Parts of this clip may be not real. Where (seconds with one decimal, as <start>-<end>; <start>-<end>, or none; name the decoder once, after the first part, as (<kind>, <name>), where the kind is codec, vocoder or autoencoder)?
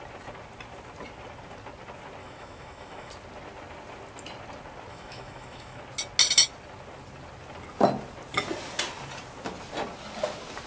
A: 2.2-3.1 (autoencoder, DAC-VAE); 4.9-5.8